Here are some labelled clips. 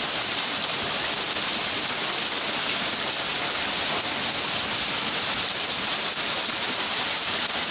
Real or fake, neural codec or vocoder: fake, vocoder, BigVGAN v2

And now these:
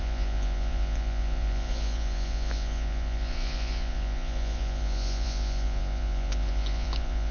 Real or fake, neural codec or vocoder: fake, vocoder, Vocos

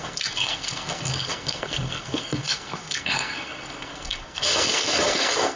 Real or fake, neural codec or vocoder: fake, codec, SNAC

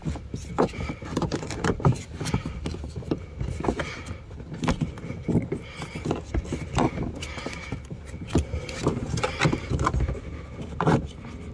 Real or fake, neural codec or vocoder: real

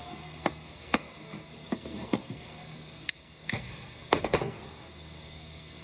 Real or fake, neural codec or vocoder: fake, codec, SNAC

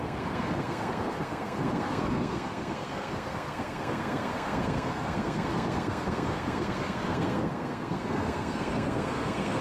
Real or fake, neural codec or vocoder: fake, codec, SNAC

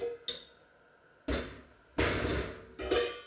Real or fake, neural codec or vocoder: real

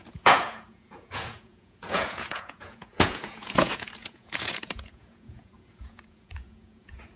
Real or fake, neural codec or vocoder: fake, vocoder, Vocos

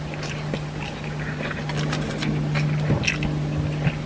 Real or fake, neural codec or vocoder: real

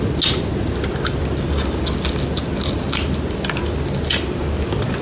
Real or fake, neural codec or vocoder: real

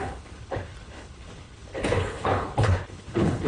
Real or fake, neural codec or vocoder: fake, codec, HILCodec